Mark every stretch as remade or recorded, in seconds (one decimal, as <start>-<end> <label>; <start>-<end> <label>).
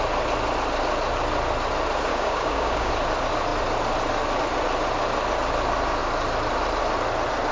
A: 0.0-2.1 recorded; 2.1-2.9 remade; 2.9-7.5 recorded